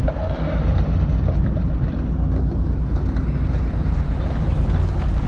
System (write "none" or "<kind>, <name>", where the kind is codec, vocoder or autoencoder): none